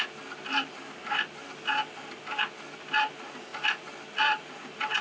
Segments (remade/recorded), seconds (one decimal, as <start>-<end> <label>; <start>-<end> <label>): 0.0-5.0 recorded